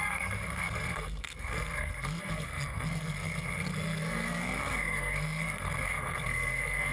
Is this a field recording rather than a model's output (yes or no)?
no